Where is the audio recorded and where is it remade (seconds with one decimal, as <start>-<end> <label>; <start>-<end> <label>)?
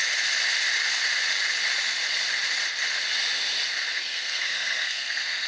0.0-3.9 recorded; 3.9-5.5 remade